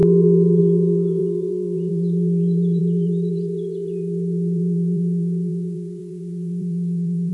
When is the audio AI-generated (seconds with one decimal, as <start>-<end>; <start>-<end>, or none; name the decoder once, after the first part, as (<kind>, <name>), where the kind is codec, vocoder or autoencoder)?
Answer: 0.0-7.3 (vocoder, BigVGAN v2)